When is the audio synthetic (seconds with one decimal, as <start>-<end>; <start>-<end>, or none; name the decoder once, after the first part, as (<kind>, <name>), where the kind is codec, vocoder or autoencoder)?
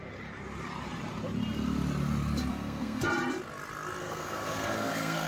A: 2.5-3.1 (codec, SNAC); 4.0-5.3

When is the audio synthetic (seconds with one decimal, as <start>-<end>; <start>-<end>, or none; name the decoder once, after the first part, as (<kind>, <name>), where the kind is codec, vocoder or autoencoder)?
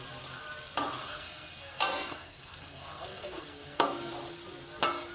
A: 1.0-4.1 (codec, SNAC)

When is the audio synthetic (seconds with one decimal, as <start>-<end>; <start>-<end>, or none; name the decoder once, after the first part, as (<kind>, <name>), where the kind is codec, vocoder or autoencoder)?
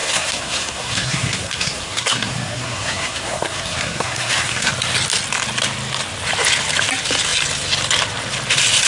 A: 0.0-4.7 (codec, SNAC)